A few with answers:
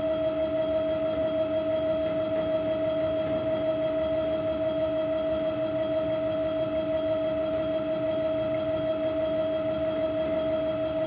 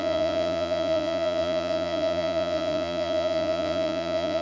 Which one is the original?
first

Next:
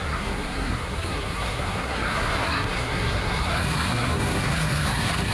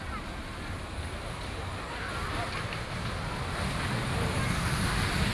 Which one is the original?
second